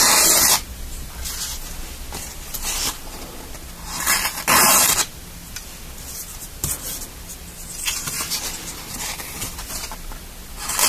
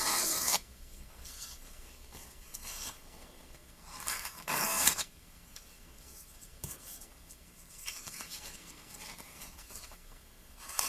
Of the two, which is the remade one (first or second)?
second